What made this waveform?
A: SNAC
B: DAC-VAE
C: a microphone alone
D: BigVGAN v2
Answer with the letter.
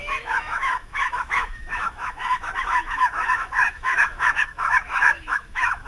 B